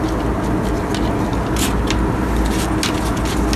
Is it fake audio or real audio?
real